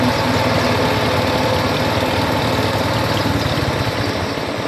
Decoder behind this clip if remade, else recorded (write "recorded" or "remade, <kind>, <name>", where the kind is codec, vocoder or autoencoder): recorded